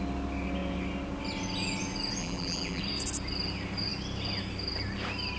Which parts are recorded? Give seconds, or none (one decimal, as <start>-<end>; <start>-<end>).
0.0-2.2; 2.8-5.4